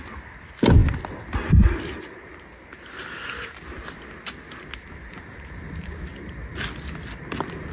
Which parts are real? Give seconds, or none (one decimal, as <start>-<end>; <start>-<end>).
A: 0.0-7.7